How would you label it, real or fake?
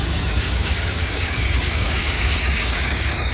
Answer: fake